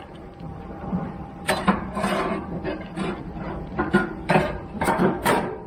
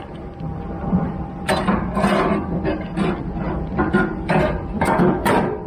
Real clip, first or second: second